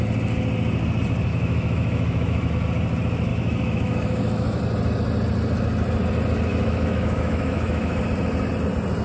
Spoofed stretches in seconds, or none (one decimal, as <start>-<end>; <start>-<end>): 1.3-2.5; 3.3-4.6; 6.5-8.0